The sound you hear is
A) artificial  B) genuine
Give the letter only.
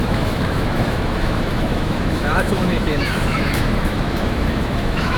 A